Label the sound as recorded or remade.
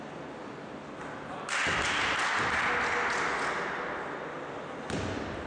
recorded